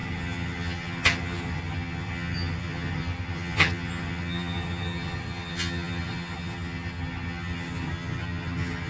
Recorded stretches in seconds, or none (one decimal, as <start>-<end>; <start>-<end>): none